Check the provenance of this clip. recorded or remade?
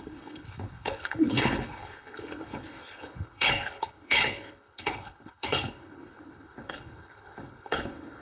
remade